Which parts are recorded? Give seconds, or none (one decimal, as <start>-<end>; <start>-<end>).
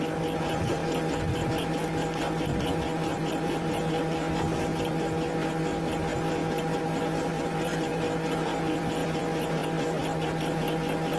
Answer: 9.0-10.3